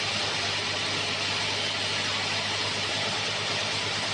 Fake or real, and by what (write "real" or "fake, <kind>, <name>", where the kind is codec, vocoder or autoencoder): real